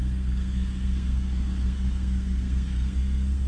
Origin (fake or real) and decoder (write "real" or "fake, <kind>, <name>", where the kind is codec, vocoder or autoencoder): fake, codec, SNAC